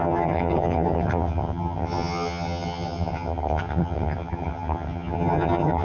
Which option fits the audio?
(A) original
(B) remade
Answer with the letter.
B